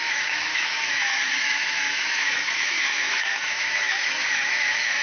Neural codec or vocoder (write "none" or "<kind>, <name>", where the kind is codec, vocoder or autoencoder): autoencoder, DAC-VAE